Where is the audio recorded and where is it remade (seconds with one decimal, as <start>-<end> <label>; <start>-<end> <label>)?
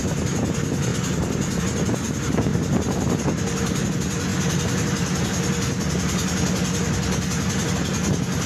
0.0-8.5 recorded